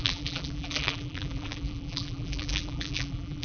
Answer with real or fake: fake